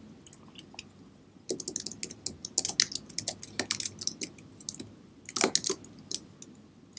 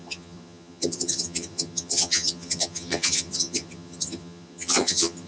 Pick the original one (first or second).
first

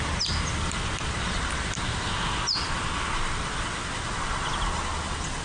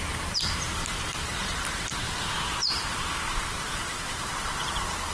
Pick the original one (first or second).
first